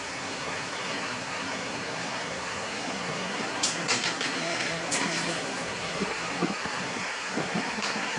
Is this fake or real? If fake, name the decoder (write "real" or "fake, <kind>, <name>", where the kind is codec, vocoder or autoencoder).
fake, codec, SNAC